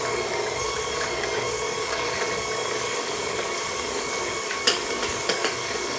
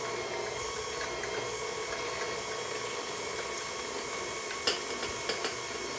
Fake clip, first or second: first